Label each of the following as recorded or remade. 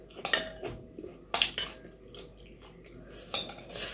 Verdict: recorded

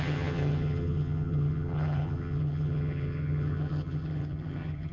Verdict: remade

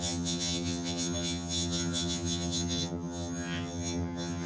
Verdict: remade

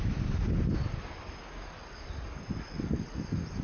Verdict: recorded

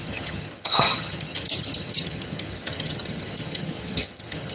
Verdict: remade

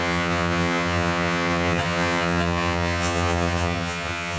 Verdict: remade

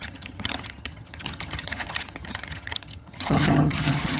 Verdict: remade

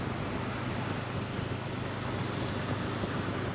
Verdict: recorded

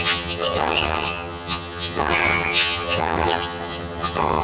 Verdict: remade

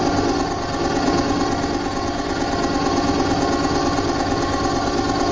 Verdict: recorded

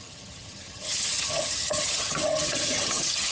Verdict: remade